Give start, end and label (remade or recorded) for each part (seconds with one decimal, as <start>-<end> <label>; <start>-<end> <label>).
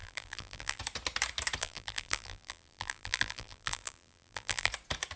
0.0-0.8 remade; 0.8-1.6 recorded; 1.6-4.7 remade; 4.7-5.2 recorded